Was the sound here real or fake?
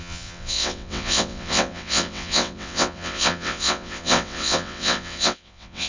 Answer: fake